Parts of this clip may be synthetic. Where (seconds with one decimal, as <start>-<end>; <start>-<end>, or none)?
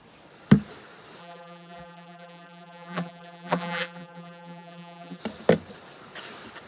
1.2-5.2